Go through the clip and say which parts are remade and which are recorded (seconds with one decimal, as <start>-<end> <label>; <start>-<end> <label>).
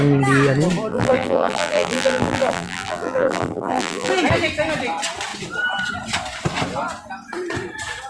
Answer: 0.0-0.9 recorded; 0.9-4.1 remade; 4.1-8.1 recorded